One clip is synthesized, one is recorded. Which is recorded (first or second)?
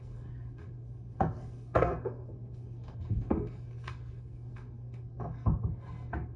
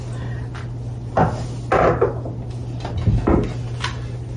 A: second